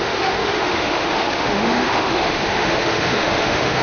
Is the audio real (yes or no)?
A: no